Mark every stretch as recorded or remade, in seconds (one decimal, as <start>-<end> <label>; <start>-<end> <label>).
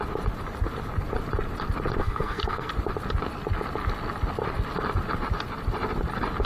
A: 0.0-2.0 recorded; 2.0-2.7 remade; 2.7-6.5 recorded